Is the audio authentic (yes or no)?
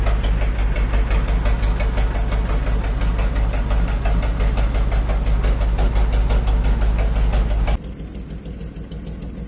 yes